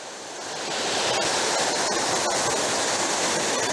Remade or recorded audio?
recorded